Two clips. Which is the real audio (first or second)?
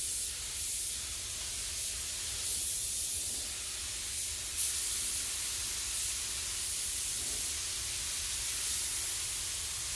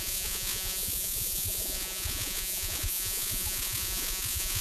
first